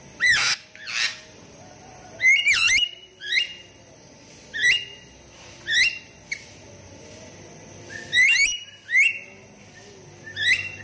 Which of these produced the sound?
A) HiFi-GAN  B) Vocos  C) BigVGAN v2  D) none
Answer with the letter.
D